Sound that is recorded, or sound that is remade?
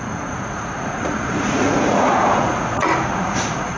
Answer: remade